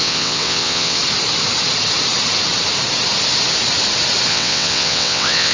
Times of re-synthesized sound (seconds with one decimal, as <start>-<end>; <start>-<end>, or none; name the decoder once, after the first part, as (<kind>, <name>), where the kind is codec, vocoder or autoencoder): 0.0-1.0 (vocoder, WaveNeXt); 4.3-5.5